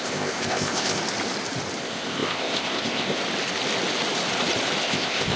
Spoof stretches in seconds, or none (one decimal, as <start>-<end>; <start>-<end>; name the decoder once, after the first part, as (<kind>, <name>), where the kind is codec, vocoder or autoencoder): 0.0-1.0 (codec, ZipCodec); 1.8-3.2; 4.8-5.4